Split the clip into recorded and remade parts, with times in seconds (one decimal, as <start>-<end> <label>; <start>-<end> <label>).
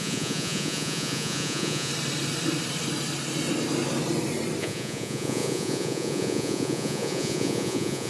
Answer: 0.0-1.9 remade; 1.9-4.6 recorded; 4.6-8.1 remade